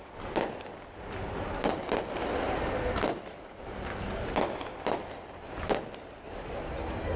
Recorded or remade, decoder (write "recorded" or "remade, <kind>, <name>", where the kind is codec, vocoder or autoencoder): recorded